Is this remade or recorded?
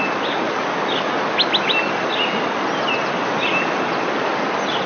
recorded